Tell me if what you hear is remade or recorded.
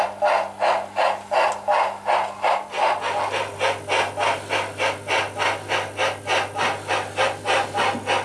recorded